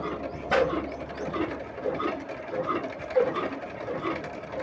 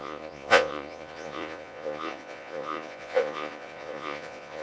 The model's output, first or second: second